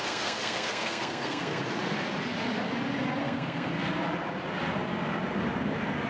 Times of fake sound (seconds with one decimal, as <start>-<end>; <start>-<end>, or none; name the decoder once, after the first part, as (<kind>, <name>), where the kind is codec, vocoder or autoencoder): 0.0-1.6 (codec, SNAC); 3.2-3.7